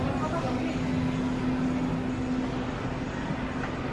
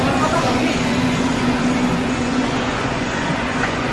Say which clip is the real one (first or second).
first